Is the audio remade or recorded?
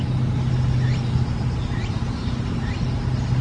recorded